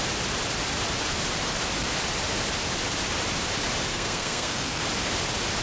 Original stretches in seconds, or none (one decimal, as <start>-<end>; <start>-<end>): 0.0-3.9; 4.8-5.6